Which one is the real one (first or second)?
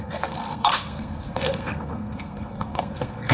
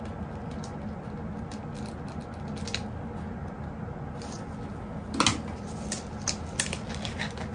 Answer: second